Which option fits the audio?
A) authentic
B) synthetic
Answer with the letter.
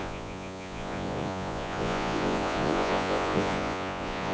B